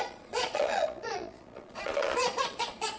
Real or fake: fake